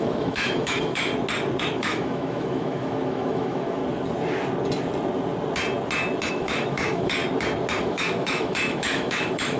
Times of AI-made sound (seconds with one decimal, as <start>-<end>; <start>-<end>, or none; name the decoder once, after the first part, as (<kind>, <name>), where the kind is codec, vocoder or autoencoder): 0.0-1.1 (autoencoder, DAC-VAE); 1.6-3.8; 6.3-7.2; 7.8-9.6